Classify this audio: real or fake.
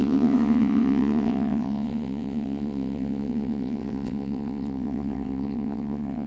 fake